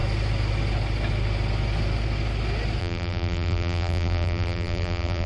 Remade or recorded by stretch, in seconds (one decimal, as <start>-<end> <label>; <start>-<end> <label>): 0.0-2.8 recorded; 2.8-5.3 remade